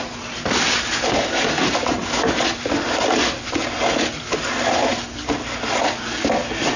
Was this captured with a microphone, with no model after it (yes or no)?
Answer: yes